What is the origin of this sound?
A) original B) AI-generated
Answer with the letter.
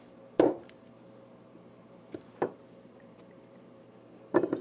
B